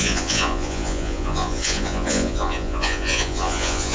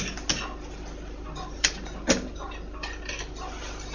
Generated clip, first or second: first